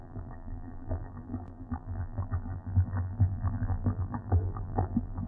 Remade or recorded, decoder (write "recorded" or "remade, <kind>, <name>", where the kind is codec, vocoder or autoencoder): remade, vocoder, BigVGAN v2